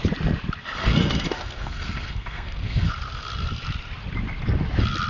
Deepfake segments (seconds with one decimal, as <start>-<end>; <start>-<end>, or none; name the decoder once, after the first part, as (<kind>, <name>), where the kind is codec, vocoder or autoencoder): 0.8-2.9 (codec, SNAC)